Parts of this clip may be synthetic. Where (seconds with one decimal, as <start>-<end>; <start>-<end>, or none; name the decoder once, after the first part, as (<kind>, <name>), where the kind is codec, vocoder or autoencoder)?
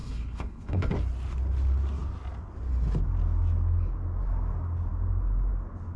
0.0-0.9 (codec, HILCodec)